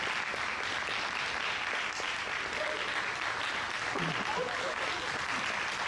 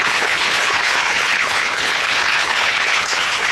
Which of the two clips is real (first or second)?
first